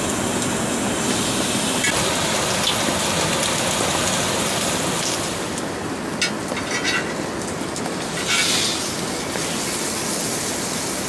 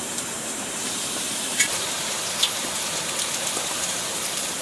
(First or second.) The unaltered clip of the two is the first